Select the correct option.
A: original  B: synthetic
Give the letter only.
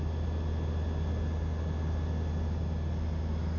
A